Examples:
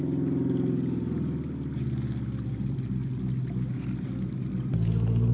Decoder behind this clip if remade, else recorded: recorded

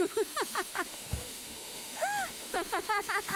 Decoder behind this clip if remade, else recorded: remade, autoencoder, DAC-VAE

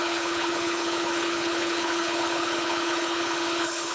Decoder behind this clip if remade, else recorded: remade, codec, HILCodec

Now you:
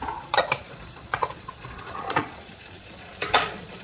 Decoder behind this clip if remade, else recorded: remade, vocoder, Vocos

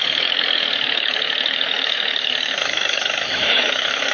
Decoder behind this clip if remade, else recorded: remade, autoencoder, DAC-VAE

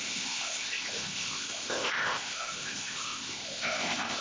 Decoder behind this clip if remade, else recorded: remade, codec, ZipCodec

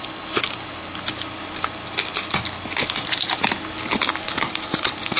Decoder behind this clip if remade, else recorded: recorded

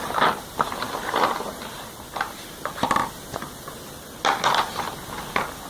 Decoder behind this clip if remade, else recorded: recorded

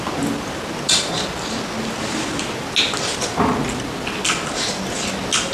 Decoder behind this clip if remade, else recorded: recorded